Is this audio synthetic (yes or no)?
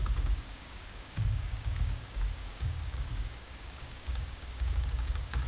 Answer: yes